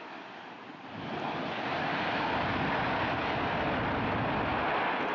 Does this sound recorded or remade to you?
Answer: recorded